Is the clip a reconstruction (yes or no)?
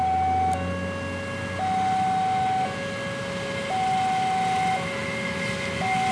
no